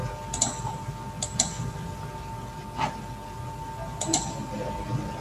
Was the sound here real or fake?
real